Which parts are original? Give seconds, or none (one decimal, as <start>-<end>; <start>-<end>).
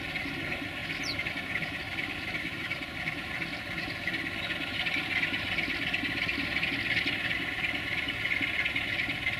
0.0-0.8; 3.3-9.4